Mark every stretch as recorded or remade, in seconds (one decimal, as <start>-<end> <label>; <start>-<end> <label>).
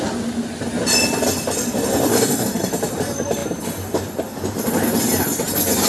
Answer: 0.0-2.1 recorded; 2.1-2.7 remade; 2.7-5.9 recorded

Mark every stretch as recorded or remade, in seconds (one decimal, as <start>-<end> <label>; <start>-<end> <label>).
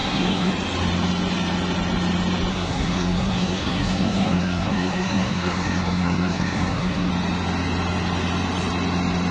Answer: 0.0-0.5 remade; 0.5-2.5 recorded; 2.5-7.1 remade; 7.1-9.3 recorded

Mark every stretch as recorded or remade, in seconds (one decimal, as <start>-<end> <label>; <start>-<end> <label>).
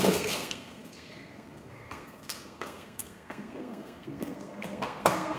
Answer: 0.0-5.4 remade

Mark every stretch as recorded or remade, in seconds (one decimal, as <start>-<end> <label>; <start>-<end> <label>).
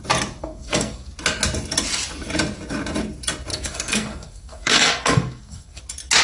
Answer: 0.0-0.4 recorded; 0.4-1.1 remade; 1.1-3.5 recorded; 3.5-5.8 remade; 5.8-6.2 recorded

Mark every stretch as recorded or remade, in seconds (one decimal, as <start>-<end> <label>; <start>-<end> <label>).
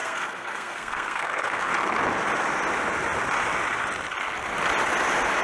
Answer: 0.0-1.7 remade; 1.7-5.4 recorded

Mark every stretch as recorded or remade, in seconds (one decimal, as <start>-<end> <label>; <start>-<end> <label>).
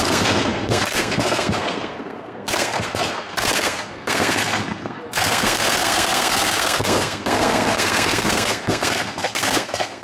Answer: 0.0-10.0 remade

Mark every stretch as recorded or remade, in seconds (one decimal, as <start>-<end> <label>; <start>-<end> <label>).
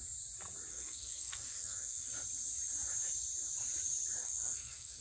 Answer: 0.0-0.7 recorded; 0.7-2.1 remade; 2.1-4.2 recorded; 4.2-5.0 remade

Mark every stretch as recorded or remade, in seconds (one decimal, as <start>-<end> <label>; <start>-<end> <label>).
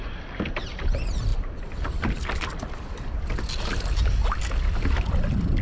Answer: 0.0-5.6 recorded